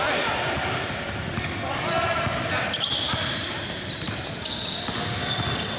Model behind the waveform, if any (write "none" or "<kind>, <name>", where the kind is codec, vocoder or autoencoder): none